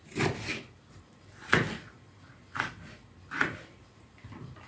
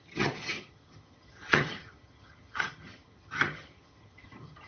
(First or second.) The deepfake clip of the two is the second